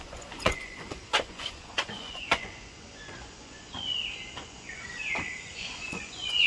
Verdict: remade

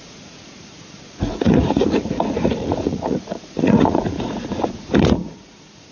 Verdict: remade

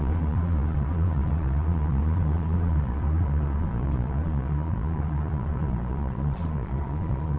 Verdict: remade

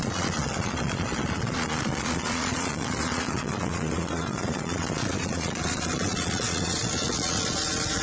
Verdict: remade